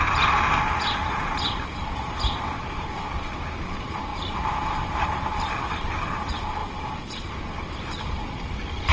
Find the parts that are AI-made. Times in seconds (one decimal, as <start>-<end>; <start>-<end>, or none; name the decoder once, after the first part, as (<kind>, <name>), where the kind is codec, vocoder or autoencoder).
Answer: 1.0-3.3 (vocoder, BigVGAN v2); 4.1-6.1; 6.6-7.3